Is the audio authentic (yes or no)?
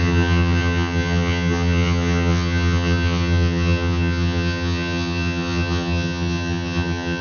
no